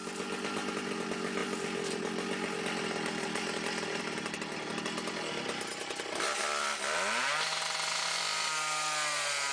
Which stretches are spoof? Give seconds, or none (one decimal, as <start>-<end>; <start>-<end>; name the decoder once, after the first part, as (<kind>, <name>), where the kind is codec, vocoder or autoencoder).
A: none